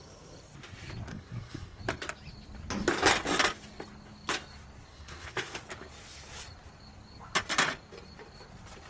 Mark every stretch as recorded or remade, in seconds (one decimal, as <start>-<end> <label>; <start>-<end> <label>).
0.0-1.1 recorded; 1.1-1.8 remade; 1.8-4.9 recorded; 4.9-5.6 remade; 5.6-8.9 recorded

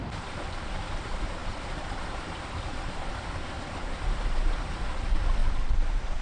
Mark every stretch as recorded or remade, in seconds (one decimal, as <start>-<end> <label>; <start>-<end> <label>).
0.0-1.4 recorded; 1.4-3.1 remade; 3.1-5.4 recorded; 5.4-6.2 remade

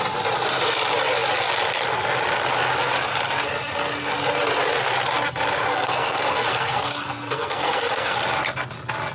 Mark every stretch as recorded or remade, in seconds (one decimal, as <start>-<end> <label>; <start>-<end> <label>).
0.0-5.7 recorded; 5.7-8.2 remade; 8.2-9.1 recorded

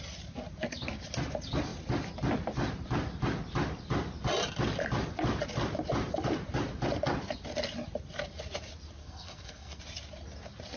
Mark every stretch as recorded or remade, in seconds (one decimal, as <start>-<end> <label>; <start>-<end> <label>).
0.0-9.0 recorded; 9.0-9.8 remade; 9.8-10.8 recorded

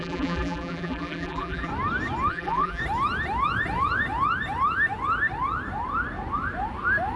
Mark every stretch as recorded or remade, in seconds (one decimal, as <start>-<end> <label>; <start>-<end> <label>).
0.0-1.7 remade; 1.7-2.3 recorded; 2.3-2.8 remade; 2.8-7.2 recorded